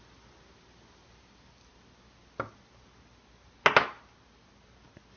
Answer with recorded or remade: recorded